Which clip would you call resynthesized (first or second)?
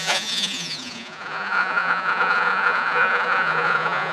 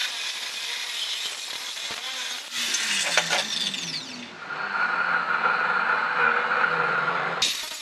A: first